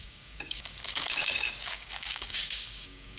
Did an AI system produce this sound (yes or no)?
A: yes